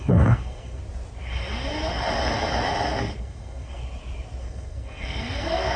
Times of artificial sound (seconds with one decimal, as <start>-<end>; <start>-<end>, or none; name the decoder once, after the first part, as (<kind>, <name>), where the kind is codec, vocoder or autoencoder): 0.0-0.8 (codec, SNAC); 3.2-3.8; 4.4-5.8